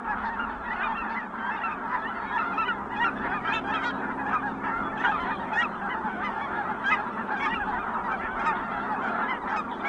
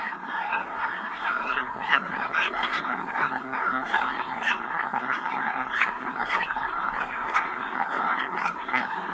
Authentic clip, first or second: first